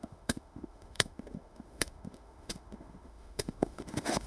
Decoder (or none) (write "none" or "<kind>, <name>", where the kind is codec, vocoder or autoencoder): autoencoder, DAC-VAE